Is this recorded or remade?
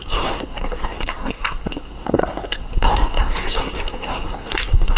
remade